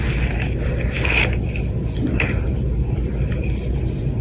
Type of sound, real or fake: real